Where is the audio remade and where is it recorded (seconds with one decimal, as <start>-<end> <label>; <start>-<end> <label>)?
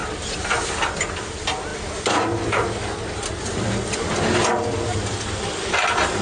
0.0-6.2 recorded